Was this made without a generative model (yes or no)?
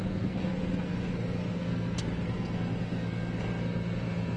no